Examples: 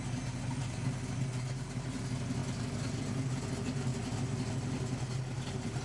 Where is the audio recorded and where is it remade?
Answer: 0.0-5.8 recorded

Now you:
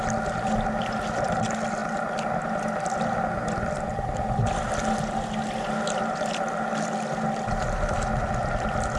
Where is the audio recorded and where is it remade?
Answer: 0.0-9.0 recorded